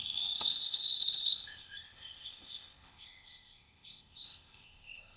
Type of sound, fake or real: fake